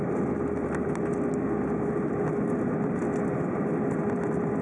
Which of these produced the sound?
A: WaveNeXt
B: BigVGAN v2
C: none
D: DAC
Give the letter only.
C